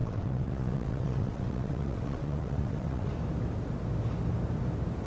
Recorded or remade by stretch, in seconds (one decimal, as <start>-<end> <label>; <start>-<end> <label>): 0.0-3.1 remade; 3.1-5.1 recorded